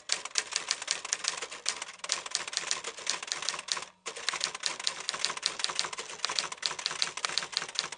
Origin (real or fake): real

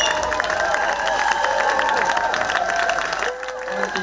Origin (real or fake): real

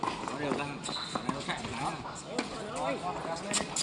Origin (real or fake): real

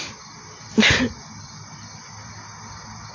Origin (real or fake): real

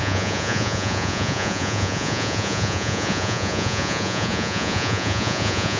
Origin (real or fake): fake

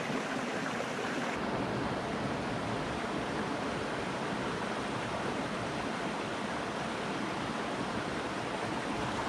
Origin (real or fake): real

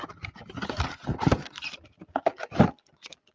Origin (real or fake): real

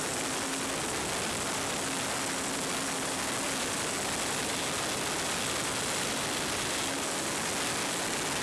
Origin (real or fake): real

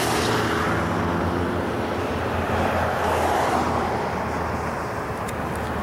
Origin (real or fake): real